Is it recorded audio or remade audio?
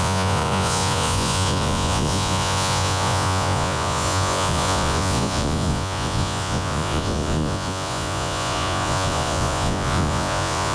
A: remade